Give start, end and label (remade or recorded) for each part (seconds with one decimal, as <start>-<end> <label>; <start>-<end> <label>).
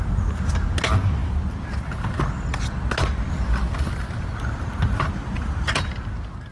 0.0-6.5 recorded